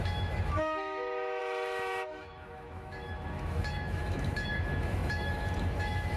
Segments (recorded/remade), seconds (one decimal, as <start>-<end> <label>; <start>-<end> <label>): 0.0-6.2 remade